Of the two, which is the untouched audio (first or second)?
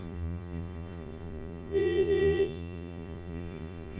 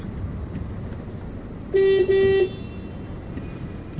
second